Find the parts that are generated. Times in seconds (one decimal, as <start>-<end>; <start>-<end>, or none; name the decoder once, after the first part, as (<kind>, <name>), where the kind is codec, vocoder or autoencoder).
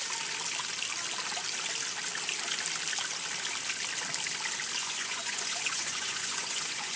4.8-7.0 (vocoder, Vocos)